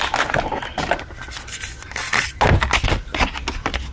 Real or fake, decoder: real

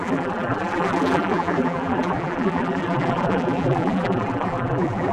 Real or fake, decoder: fake, vocoder, BigVGAN v2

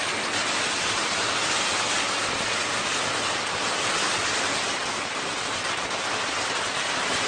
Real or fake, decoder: real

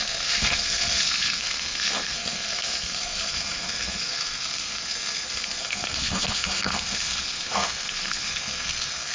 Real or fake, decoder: fake, codec, SNAC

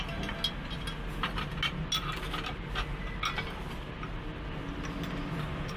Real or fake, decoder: real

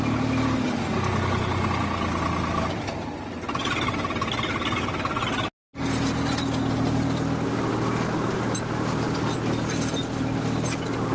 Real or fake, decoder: real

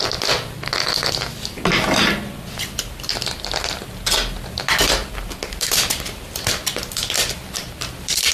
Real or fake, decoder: real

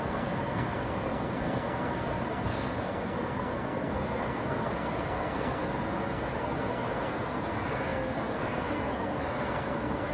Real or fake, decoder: fake, codec, SNAC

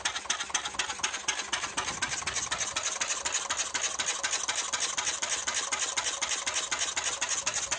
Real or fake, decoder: real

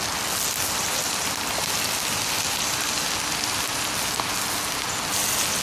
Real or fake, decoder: real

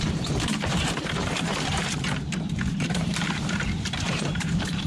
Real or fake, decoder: fake, vocoder, BigVGAN v2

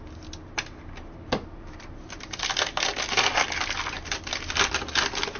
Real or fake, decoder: real